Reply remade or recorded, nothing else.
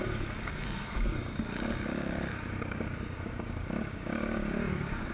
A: remade